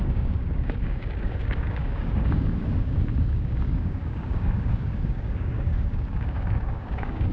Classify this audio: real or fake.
fake